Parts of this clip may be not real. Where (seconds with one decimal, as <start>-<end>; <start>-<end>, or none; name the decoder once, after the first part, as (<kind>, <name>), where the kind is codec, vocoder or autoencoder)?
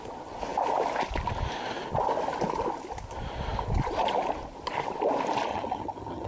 5.5-6.3 (vocoder, HiFi-GAN)